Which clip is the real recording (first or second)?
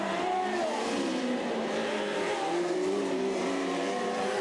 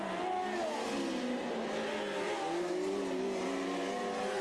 second